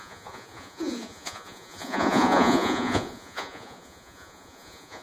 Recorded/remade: remade